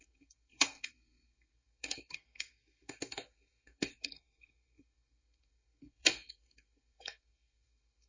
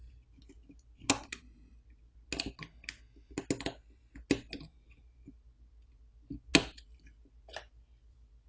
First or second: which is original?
second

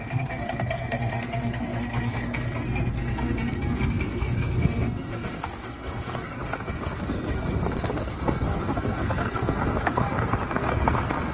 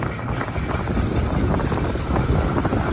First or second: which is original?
second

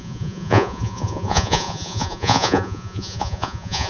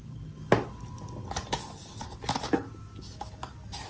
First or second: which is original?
second